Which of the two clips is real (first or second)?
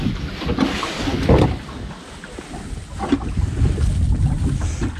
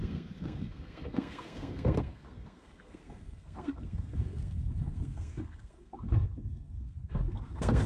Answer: first